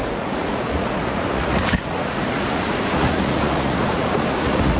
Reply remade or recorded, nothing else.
remade